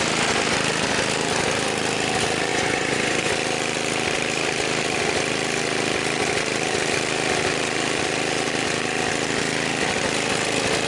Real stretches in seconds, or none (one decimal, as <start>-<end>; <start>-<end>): 0.0-2.5; 3.3-10.9